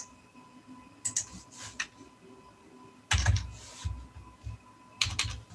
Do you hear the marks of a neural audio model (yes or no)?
no